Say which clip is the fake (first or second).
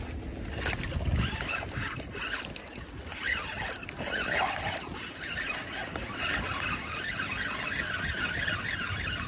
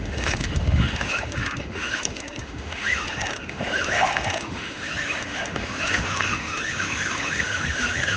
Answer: second